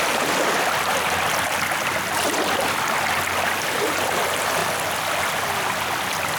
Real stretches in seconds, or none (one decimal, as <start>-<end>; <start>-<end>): 0.0-6.4